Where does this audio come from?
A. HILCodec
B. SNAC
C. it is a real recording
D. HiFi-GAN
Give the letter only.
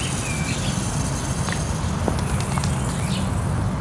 C